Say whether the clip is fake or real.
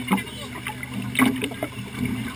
real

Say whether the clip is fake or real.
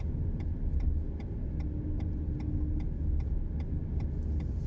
real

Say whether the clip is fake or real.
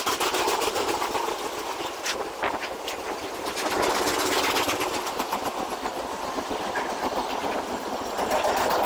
real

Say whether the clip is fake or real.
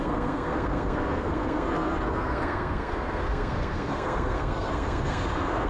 fake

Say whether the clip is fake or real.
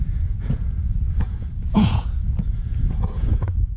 fake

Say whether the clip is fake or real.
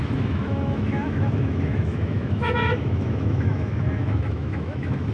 fake